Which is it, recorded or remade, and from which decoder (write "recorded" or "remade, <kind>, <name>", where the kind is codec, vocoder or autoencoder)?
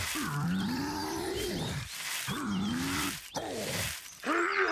recorded